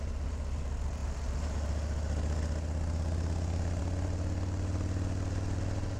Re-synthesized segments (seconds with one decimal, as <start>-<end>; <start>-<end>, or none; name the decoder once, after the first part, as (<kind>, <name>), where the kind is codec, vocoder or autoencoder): none